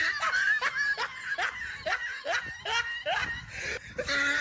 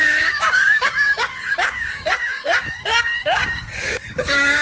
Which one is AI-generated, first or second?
second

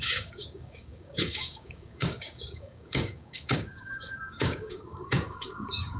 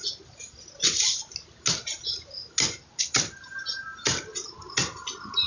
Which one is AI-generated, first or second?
first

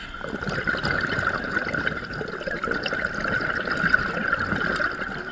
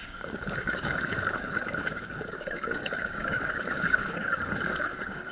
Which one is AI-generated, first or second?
second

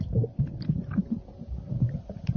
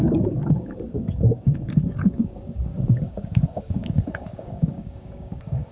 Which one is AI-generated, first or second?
second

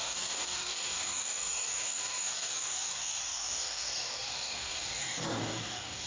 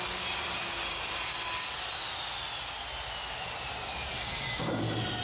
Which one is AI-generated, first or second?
first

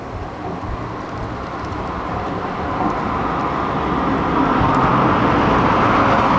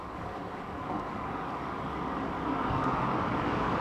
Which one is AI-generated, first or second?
second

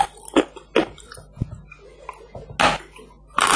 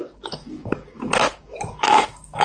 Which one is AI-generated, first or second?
second